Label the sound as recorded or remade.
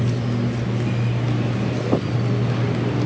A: recorded